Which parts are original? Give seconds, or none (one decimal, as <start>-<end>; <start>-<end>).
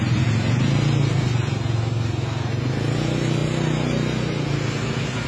0.0-5.3